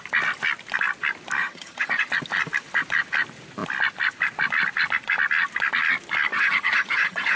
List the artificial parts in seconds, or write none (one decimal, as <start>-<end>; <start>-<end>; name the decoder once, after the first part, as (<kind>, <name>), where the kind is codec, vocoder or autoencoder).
1.4-2.1 (vocoder, HiFi-GAN); 6.3-7.4